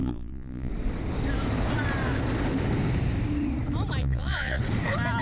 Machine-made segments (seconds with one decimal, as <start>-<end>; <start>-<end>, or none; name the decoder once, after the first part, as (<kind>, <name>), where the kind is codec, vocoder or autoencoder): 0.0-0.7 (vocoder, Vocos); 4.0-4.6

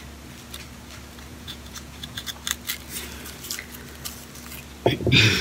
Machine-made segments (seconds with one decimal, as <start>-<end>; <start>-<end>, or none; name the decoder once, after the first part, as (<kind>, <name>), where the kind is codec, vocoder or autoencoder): 1.3-2.3 (vocoder, Vocos)

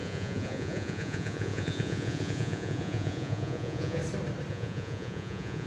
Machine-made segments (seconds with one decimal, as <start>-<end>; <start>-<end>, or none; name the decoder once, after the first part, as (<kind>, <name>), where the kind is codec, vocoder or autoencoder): 0.0-4.0 (vocoder, Vocos); 4.5-5.7

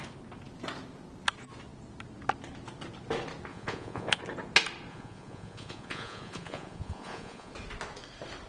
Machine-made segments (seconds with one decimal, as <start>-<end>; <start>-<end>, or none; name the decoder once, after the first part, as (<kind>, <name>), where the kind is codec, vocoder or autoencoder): 3.5-4.2 (vocoder, Vocos); 4.9-7.5

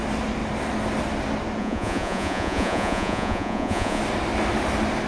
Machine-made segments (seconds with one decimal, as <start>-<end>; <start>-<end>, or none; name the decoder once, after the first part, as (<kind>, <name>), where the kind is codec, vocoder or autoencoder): 1.6-4.0 (vocoder, Vocos)

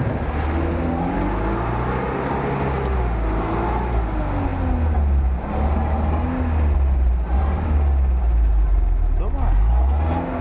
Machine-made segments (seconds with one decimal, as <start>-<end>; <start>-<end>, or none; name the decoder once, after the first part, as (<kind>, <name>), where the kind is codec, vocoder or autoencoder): none